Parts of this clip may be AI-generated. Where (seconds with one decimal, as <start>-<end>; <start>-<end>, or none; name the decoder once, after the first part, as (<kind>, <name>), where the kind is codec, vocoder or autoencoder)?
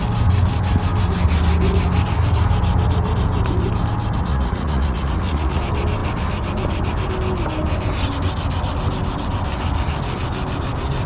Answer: 4.3-5.6 (vocoder, Vocos)